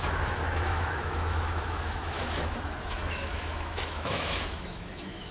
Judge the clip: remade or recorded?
remade